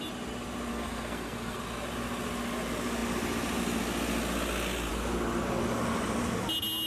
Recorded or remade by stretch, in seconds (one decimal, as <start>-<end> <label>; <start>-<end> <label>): 0.0-0.7 recorded; 0.7-1.6 remade; 1.6-6.9 recorded

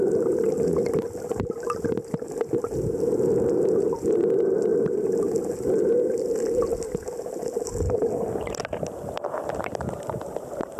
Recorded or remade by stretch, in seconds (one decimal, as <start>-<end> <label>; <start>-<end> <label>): 0.0-10.8 recorded

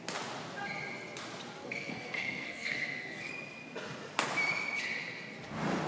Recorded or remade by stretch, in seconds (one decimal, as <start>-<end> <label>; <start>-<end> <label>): 0.0-1.6 recorded; 1.6-3.3 remade; 3.3-5.9 recorded

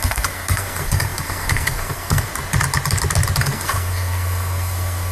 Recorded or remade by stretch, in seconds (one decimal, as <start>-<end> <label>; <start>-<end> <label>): 0.0-2.3 remade; 2.3-3.4 recorded; 3.4-5.1 remade

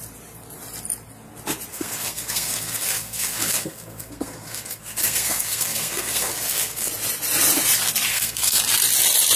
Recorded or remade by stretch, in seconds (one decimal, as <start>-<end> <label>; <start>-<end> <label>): 0.0-1.7 recorded; 1.7-6.9 remade; 6.9-8.1 recorded; 8.1-8.6 remade; 8.6-9.4 recorded

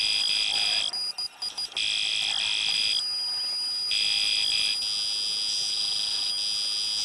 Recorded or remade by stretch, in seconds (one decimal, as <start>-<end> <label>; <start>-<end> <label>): 0.0-7.0 recorded